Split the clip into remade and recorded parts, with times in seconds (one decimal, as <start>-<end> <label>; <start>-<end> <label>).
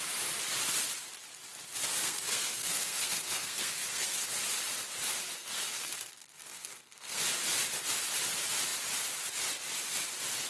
0.0-1.9 recorded; 1.9-4.3 remade; 4.3-5.4 recorded; 5.4-7.2 remade; 7.2-10.5 recorded